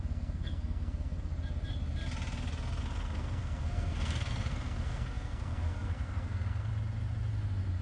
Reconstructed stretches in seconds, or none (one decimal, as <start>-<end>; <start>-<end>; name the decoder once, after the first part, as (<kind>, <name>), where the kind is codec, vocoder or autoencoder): 0.0-1.3 (codec, SNAC); 2.8-6.7